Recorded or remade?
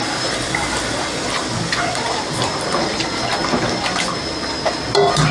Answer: recorded